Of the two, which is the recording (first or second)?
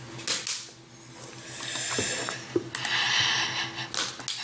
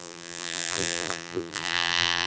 first